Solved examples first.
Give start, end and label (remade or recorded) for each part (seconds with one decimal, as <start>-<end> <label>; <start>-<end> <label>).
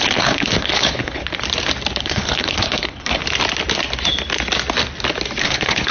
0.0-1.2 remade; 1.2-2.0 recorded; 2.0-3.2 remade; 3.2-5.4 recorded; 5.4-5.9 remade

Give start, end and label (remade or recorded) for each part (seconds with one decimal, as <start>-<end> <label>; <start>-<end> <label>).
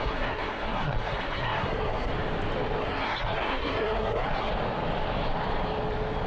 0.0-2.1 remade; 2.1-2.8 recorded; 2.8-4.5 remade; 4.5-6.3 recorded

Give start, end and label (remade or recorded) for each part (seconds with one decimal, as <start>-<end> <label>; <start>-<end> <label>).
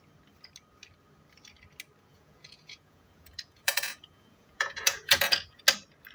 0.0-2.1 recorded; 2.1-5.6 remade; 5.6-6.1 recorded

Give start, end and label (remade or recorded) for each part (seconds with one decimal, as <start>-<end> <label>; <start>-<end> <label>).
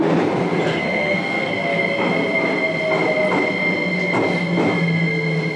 0.0-0.7 recorded; 0.7-1.5 remade; 1.5-5.6 recorded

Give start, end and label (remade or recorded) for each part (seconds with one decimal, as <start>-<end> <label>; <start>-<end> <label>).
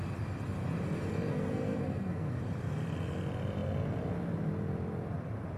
0.0-1.3 recorded; 1.3-2.4 remade; 2.4-5.6 recorded